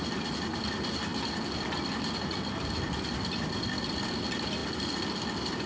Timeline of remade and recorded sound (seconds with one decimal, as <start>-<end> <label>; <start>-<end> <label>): 0.0-5.7 recorded